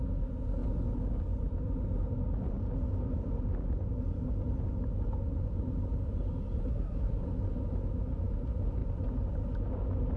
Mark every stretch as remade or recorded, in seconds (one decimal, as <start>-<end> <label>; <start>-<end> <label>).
0.0-6.7 recorded; 6.7-7.2 remade; 7.2-10.2 recorded